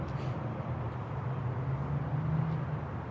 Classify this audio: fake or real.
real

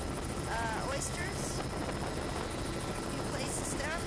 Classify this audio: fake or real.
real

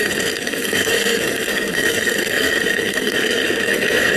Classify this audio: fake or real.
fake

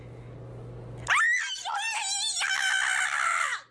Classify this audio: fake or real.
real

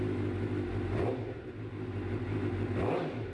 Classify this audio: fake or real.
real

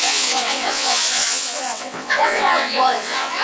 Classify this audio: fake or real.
fake